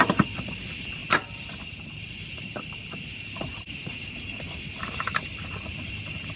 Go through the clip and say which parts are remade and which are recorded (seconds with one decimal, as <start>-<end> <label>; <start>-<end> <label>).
0.0-6.4 recorded